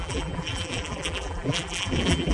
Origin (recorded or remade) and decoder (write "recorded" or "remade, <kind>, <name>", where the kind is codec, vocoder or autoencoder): remade, vocoder, BigVGAN v2